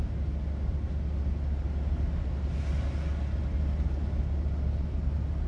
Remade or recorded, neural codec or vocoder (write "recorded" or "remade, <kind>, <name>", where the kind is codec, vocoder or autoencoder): recorded